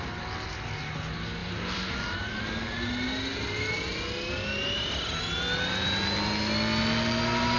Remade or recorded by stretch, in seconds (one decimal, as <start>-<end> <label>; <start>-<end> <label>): 0.0-1.4 recorded; 1.4-2.4 remade; 2.4-7.6 recorded